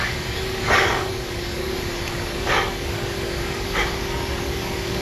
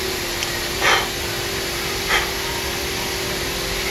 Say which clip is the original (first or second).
second